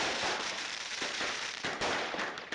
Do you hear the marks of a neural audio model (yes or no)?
yes